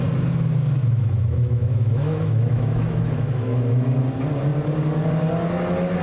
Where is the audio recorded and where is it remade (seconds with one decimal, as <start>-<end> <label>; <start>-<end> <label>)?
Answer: 0.0-0.8 recorded; 0.8-4.0 remade; 4.0-6.0 recorded